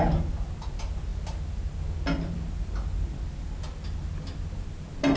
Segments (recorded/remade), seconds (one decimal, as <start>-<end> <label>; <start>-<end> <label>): 0.0-5.2 recorded